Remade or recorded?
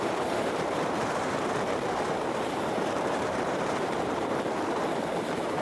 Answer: remade